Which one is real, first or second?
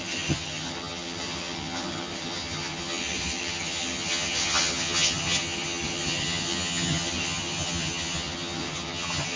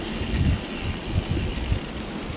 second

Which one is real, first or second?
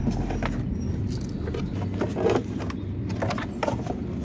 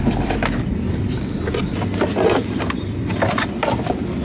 first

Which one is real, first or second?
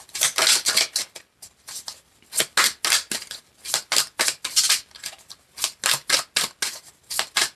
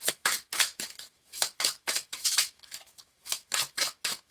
first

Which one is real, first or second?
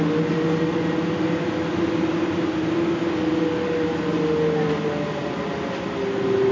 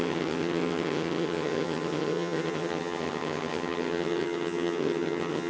first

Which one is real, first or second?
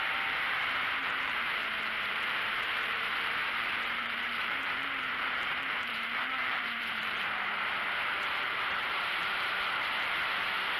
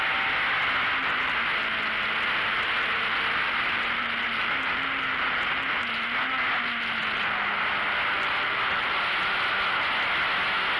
second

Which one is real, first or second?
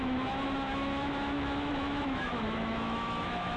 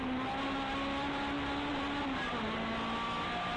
second